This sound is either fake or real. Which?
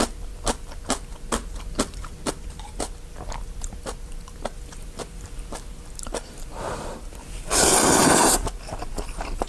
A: real